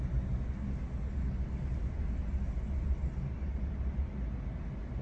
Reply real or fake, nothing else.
real